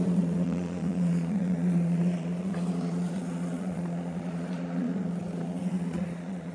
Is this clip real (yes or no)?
no